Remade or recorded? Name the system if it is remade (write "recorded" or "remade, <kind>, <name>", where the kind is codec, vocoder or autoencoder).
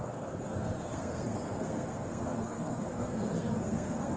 remade, codec, SNAC